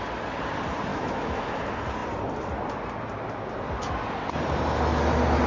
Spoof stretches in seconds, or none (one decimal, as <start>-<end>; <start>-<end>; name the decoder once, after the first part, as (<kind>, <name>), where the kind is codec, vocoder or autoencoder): 0.9-1.6 (autoencoder, DAC-VAE)